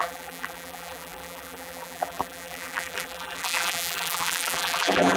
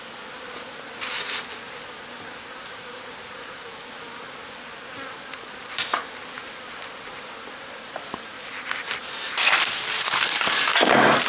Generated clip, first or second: first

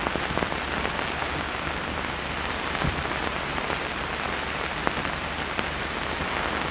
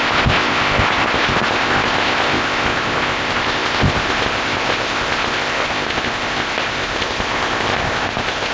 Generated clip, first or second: second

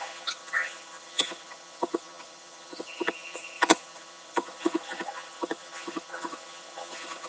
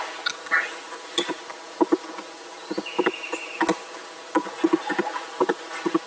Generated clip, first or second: first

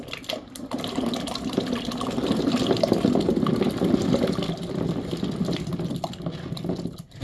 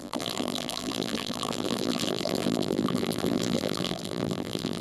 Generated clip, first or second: second